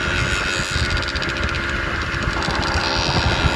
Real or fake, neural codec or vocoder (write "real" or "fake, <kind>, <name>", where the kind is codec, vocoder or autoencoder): real